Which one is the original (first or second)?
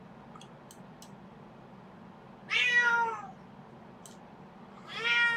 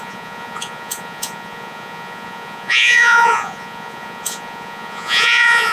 first